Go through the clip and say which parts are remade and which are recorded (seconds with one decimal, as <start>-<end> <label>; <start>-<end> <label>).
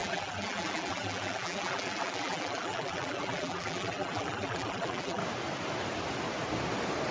0.0-5.2 remade; 5.2-7.1 recorded